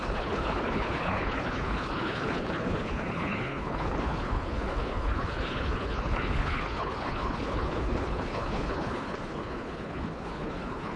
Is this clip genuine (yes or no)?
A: no